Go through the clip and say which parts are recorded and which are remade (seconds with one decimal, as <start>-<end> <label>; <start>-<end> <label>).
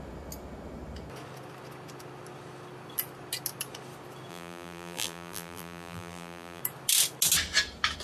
0.0-4.3 recorded; 4.3-6.6 remade; 6.6-8.0 recorded